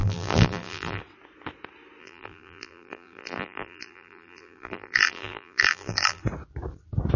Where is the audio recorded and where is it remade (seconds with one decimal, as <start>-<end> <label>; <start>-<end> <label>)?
0.0-1.0 remade; 1.0-2.0 recorded; 2.0-6.2 remade; 6.2-7.2 recorded